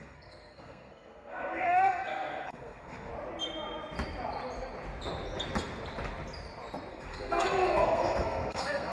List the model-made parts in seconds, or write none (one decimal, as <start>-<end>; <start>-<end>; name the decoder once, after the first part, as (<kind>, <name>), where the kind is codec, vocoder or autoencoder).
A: 0.0-3.1 (codec, SNAC); 6.9-8.9